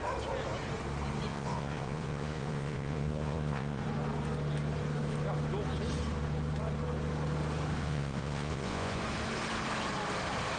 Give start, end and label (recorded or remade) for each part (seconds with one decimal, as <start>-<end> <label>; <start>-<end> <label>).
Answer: 0.0-1.3 recorded; 1.3-3.8 remade; 3.8-7.8 recorded; 7.8-9.0 remade; 9.0-10.6 recorded